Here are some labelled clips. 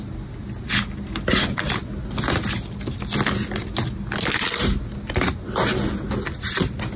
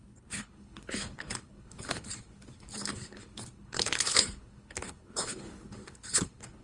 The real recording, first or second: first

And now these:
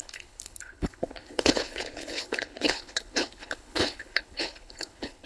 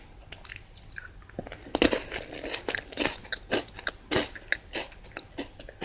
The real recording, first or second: second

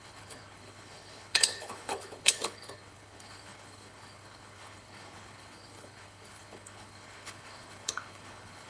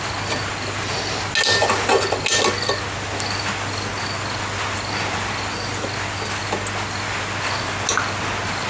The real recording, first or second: second